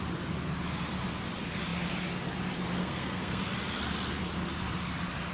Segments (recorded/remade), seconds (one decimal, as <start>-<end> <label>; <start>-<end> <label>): 0.0-2.8 recorded; 2.8-3.4 remade; 3.4-5.3 recorded